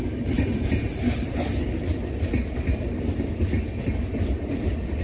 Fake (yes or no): no